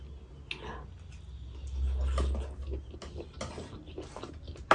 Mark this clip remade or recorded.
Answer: recorded